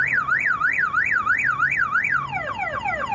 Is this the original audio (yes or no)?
yes